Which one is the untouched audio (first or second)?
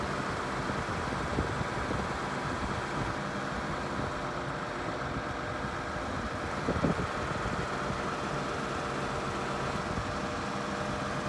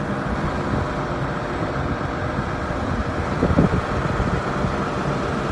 first